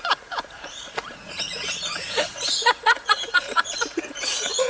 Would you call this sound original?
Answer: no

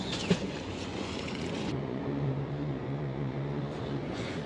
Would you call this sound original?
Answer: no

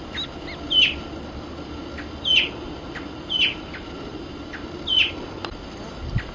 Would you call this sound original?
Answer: yes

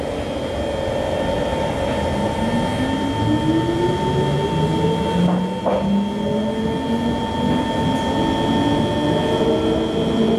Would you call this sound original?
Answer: yes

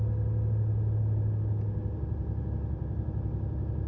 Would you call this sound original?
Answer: yes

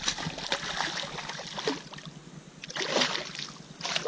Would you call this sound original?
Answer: yes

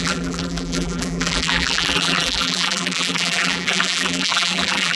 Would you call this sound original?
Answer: no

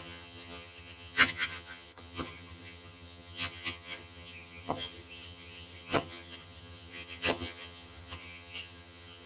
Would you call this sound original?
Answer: no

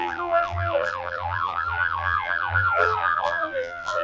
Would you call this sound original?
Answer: no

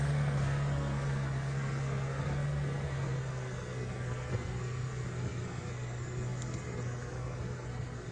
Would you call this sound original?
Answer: no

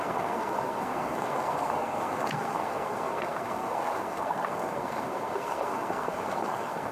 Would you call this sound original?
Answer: no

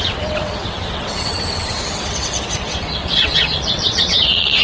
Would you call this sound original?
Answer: no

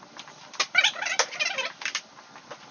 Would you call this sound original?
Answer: yes